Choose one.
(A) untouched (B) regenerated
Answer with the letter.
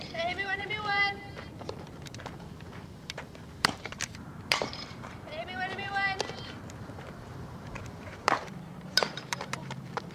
B